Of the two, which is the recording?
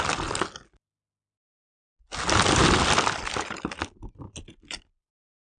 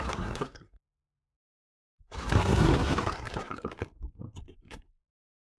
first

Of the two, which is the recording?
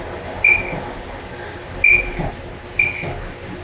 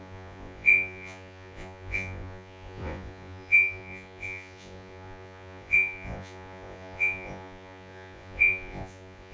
first